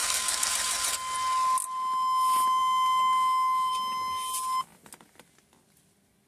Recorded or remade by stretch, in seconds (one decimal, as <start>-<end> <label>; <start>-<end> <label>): 0.0-0.5 remade; 0.5-6.3 recorded